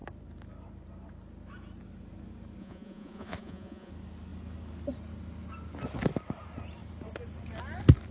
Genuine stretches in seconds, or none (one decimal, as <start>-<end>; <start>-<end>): 0.0-2.6; 3.9-8.1